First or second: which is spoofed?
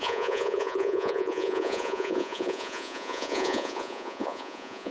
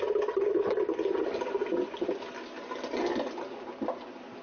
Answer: first